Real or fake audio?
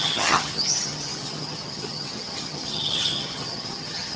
fake